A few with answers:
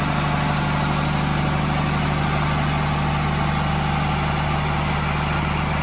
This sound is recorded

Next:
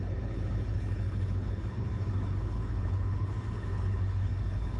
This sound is remade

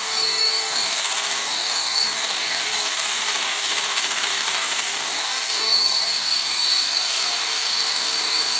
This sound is remade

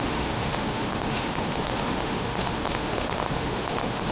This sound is remade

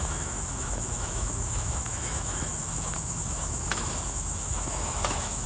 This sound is remade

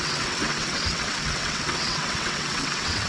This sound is remade